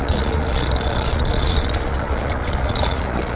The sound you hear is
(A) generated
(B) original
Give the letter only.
A